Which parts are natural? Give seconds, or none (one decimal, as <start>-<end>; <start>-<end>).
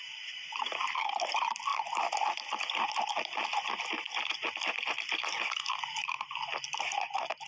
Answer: 0.0-7.5